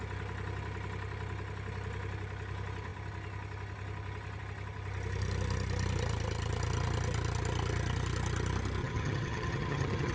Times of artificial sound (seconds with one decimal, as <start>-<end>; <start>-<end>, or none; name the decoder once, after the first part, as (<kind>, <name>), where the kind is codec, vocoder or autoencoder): 8.8-10.1 (vocoder, HiFi-GAN)